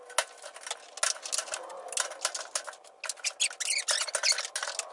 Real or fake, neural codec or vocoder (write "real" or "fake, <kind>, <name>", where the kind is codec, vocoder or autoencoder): real